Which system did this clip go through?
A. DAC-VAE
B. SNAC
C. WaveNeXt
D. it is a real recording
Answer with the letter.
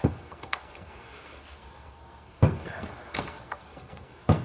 B